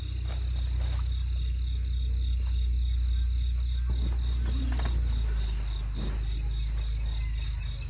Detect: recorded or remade recorded